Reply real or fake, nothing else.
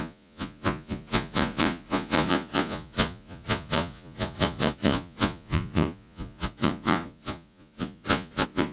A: fake